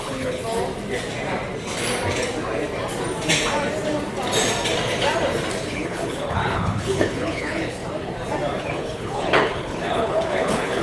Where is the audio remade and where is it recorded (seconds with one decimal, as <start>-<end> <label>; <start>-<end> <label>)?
0.0-0.4 remade; 0.4-5.6 recorded; 5.6-7.8 remade; 7.8-8.6 recorded; 8.6-10.8 remade